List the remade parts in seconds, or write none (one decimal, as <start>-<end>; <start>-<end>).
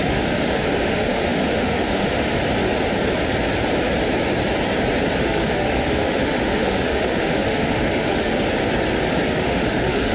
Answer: 0.0-2.4; 5.2-8.3; 9.3-10.1